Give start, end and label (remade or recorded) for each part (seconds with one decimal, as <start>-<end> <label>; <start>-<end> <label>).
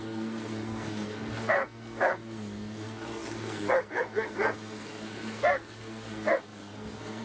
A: 0.0-7.2 remade